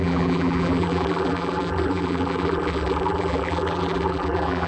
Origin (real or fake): fake